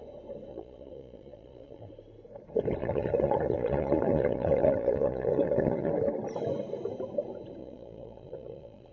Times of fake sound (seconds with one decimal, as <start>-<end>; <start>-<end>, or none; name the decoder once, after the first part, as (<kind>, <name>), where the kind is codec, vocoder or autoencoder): 0.5-1.9 (vocoder, Vocos); 2.8-5.9; 7.6-8.9